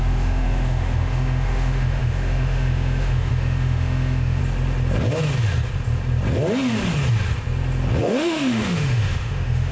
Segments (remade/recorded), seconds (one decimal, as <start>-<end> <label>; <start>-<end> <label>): 0.0-4.4 remade; 4.4-8.0 recorded; 8.0-9.7 remade